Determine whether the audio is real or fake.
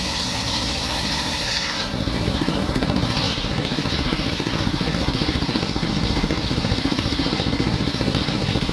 fake